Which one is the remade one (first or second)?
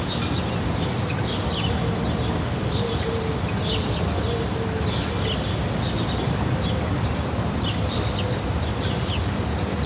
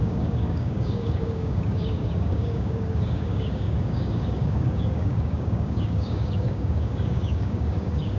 second